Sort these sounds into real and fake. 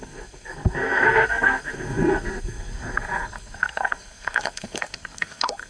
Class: fake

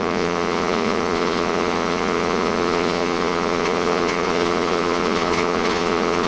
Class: fake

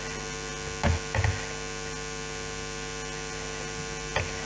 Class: real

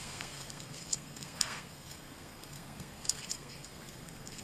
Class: fake